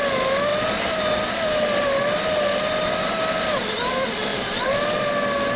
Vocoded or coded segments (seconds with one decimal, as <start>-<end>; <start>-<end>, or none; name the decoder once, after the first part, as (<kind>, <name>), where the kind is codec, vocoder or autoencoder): 4.3-5.1 (vocoder, BigVGAN v2)